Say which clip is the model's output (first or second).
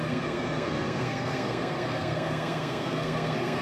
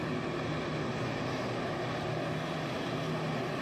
first